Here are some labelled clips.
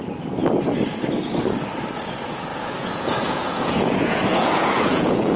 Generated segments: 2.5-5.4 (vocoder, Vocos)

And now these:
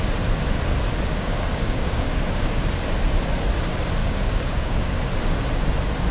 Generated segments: 1.1-2.6 (codec, DAC); 4.0-5.0

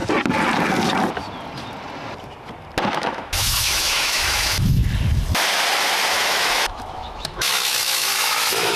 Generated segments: 2.9-4.8 (autoencoder, DAC-VAE); 6.1-8.8

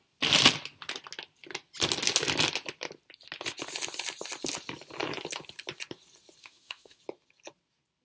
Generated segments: 6.4-7.0 (autoencoder, DAC-VAE)

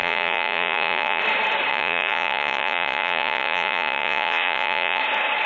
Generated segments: 0.0-1.2 (vocoder, Vocos); 1.7-5.0

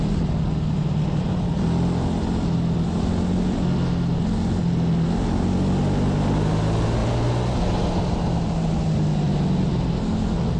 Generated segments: none

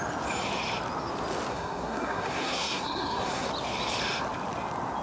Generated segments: 1.5-3.5 (codec, SNAC)